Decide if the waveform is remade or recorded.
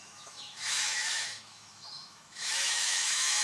remade